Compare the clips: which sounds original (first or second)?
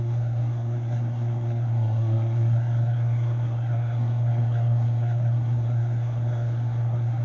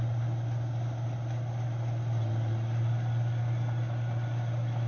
second